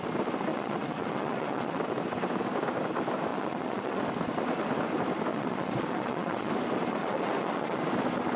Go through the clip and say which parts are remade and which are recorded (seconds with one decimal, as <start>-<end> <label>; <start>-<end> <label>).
0.0-0.5 recorded; 0.5-1.8 remade; 1.8-3.3 recorded; 3.3-4.0 remade; 4.0-5.3 recorded; 5.3-6.5 remade; 6.5-7.0 recorded; 7.0-7.8 remade; 7.8-8.4 recorded